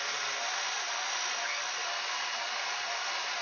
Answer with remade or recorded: recorded